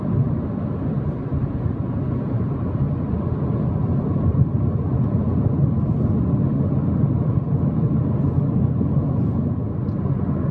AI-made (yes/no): no